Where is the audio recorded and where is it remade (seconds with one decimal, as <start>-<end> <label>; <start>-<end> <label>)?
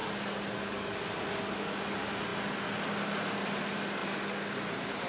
0.0-1.0 remade; 1.0-5.1 recorded